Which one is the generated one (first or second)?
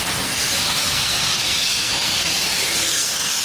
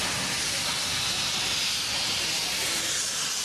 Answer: first